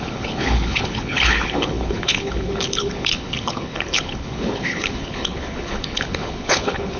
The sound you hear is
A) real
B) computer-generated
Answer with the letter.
B